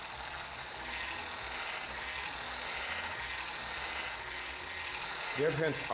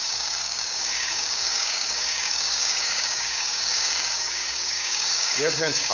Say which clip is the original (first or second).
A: first